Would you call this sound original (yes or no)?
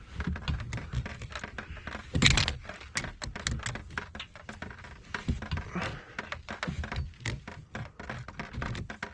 yes